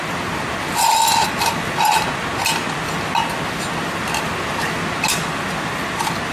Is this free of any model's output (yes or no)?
yes